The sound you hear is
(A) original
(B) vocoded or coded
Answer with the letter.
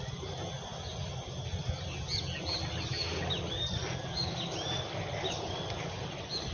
A